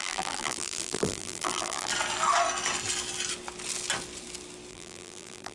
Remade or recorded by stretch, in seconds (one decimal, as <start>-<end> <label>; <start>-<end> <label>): 0.0-1.9 remade; 1.9-4.7 recorded; 4.7-5.5 remade

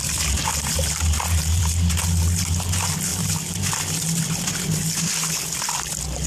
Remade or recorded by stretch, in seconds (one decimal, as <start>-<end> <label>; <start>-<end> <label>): 0.0-6.3 recorded

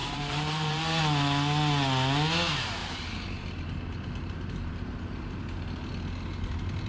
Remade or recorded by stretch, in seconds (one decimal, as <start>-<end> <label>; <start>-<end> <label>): 0.0-1.0 remade; 1.0-2.8 recorded; 2.8-5.4 remade; 5.4-6.9 recorded

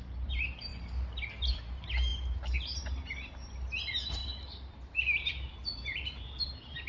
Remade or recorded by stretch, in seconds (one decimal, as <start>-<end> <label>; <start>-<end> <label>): 0.0-0.7 remade; 0.7-1.5 recorded; 1.5-6.9 remade

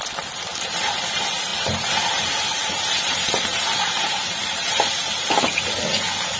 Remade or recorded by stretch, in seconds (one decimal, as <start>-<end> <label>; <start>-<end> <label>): 0.0-1.5 recorded; 1.5-5.3 remade; 5.3-6.4 recorded